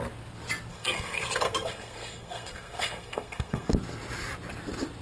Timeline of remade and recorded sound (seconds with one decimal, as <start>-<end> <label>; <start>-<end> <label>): 0.0-0.7 recorded; 0.7-3.7 remade; 3.7-5.0 recorded